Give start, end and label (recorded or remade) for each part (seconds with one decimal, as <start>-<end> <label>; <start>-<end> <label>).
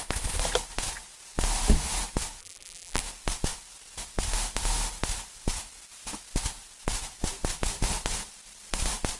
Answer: 0.0-2.4 recorded; 2.4-3.0 remade; 3.0-9.2 recorded